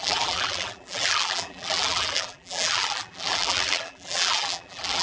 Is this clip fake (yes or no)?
yes